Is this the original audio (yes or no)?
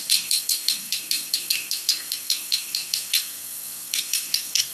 no